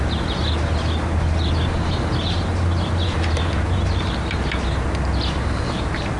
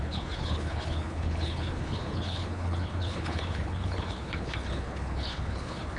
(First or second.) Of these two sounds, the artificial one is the second